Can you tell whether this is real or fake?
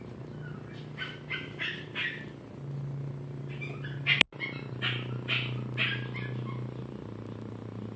real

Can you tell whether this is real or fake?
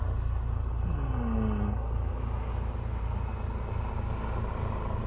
real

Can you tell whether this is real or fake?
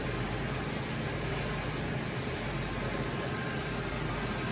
real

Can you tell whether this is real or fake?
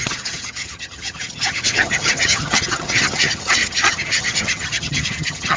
fake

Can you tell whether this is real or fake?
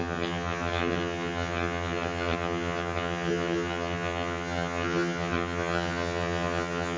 fake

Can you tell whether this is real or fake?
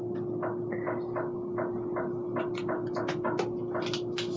real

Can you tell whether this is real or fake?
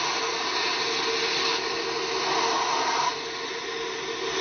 real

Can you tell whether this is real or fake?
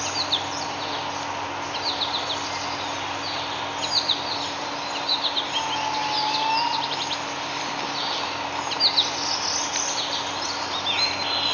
real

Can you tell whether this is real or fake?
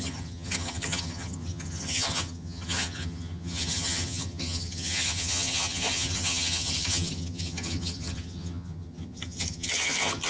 fake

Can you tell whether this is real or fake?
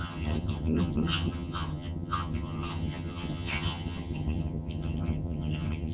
fake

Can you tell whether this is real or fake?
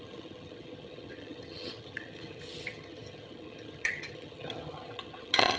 fake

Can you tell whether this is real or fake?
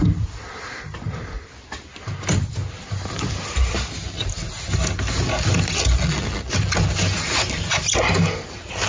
real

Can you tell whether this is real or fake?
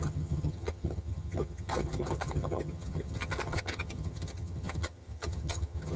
fake